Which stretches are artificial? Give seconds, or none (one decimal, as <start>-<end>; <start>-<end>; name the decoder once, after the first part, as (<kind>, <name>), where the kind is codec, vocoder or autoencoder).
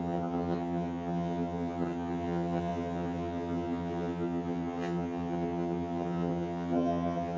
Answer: 0.0-7.4 (vocoder, HiFi-GAN)